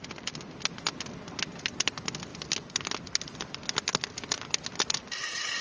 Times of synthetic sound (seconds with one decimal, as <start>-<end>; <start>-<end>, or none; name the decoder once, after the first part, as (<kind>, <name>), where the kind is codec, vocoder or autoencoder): none